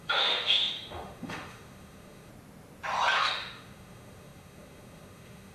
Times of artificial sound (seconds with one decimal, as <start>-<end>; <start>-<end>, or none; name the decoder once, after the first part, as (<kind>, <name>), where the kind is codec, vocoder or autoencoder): 0.0-2.3 (autoencoder, DAC-VAE); 3.2-5.5